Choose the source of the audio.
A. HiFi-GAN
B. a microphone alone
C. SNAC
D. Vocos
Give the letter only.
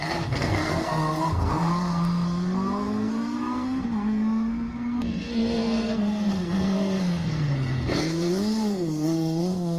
C